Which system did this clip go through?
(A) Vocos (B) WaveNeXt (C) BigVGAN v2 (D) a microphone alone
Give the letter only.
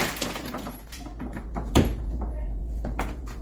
A